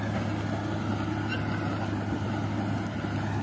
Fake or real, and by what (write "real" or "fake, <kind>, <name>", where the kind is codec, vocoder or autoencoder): real